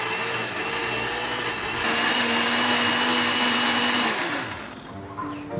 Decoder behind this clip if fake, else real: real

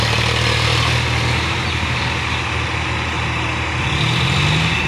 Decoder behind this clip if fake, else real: real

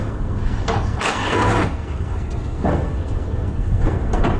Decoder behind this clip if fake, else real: fake, codec, SNAC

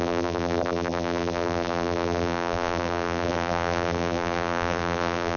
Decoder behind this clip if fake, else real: fake, vocoder, BigVGAN v2